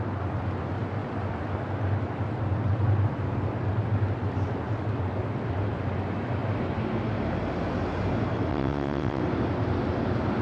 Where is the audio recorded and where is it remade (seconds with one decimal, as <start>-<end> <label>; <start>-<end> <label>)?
0.0-8.5 recorded; 8.5-9.2 remade; 9.2-10.4 recorded